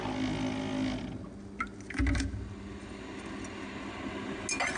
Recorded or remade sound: recorded